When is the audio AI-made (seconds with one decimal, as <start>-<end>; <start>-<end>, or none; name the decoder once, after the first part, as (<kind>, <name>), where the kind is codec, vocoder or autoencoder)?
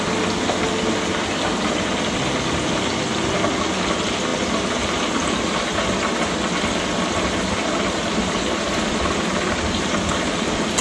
none